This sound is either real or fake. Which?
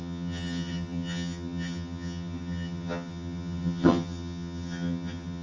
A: fake